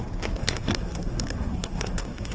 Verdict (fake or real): fake